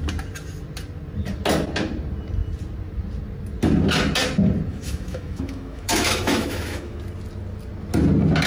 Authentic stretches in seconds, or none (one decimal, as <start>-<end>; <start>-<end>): 0.0-4.7; 7.0-8.5